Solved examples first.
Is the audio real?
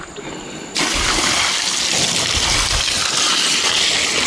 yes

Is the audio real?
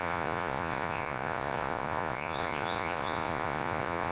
no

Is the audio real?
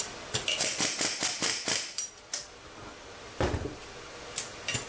yes